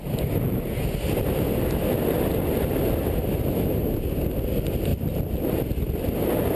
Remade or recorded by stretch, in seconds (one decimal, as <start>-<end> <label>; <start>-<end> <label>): 0.0-6.6 recorded